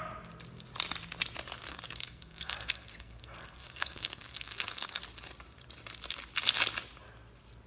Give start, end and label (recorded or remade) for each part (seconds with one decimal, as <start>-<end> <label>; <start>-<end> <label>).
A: 0.0-1.7 recorded; 1.7-5.0 remade; 5.0-7.7 recorded